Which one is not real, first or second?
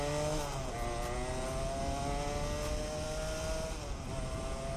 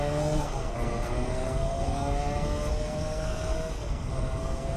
second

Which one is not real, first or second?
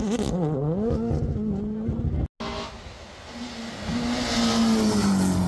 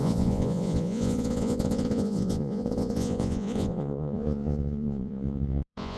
second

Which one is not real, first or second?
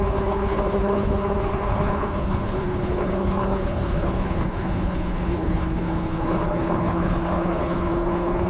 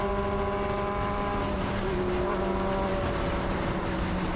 first